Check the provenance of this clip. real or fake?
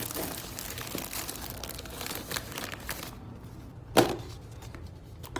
real